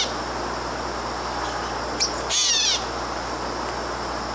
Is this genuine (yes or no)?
yes